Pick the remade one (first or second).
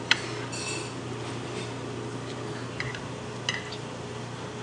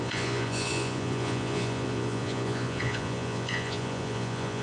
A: second